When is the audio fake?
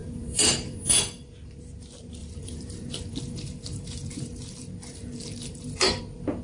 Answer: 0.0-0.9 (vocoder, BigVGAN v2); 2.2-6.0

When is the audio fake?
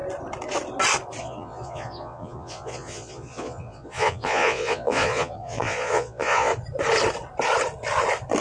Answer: 1.2-6.5 (vocoder, Vocos)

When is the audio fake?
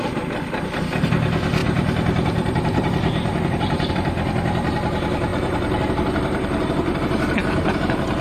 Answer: 1.6-3.9 (vocoder, BigVGAN v2); 5.3-7.4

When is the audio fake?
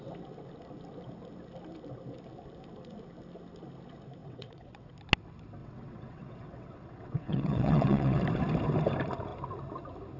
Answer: 4.2-4.9 (vocoder, WaveNeXt); 5.6-8.2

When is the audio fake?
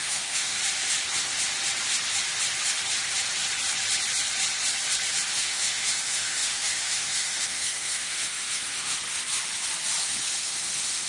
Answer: 0.0-0.6 (autoencoder, DAC-VAE); 5.3-9.0; 10.0-11.1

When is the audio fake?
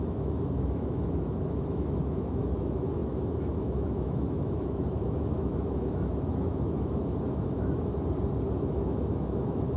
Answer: 0.0-7.9 (autoencoder, DAC-VAE); 8.6-9.8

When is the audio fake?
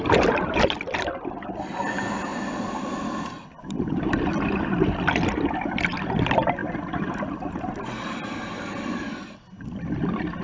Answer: none